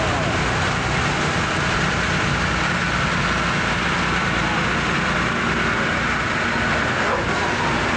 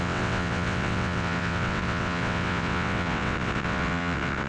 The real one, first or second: first